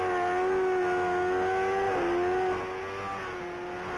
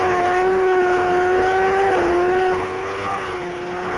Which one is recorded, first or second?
first